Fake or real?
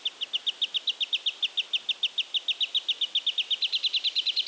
real